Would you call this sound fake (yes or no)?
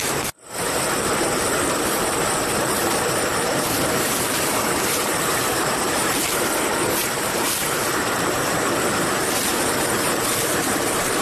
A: yes